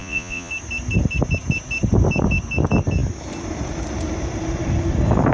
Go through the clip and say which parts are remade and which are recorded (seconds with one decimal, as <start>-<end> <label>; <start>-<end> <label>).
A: 0.0-0.5 remade; 0.5-5.3 recorded